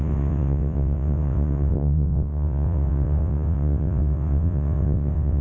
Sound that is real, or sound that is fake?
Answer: fake